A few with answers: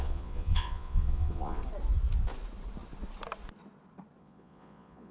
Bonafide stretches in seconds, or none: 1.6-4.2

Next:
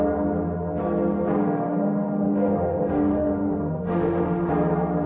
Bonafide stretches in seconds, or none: 0.0-1.4; 4.5-5.1

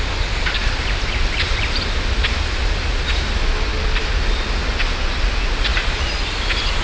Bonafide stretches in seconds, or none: 0.0-0.6; 1.8-3.7; 4.5-5.7; 6.2-6.8